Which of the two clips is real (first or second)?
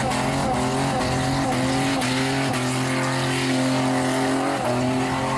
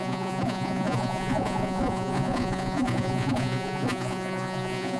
first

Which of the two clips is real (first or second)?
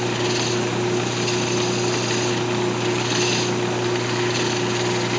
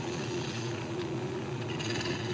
first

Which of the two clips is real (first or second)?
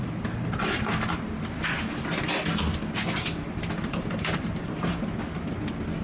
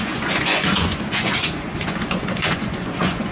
first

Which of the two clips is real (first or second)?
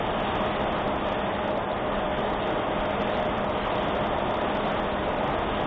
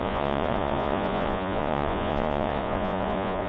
first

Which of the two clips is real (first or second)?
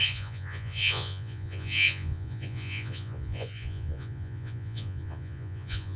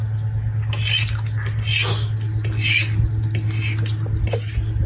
second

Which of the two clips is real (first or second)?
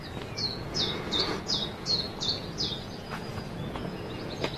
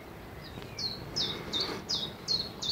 second